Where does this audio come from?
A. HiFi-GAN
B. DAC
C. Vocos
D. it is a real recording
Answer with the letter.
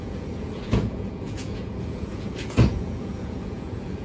C